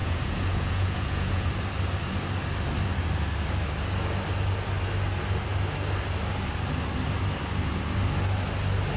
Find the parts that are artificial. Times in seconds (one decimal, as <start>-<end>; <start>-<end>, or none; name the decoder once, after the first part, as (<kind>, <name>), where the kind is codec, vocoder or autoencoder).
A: 0.0-1.5 (vocoder, Vocos)